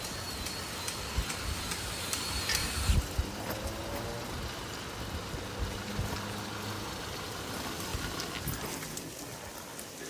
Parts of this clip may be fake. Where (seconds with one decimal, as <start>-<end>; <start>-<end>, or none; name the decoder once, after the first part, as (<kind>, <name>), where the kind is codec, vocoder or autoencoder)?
none